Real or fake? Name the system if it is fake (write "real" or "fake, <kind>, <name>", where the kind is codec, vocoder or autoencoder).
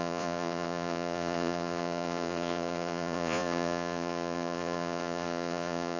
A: fake, vocoder, Vocos